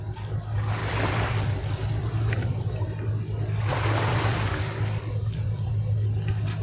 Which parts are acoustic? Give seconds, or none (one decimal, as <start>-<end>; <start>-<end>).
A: 0.0-0.8; 2.6-3.7; 5.7-6.6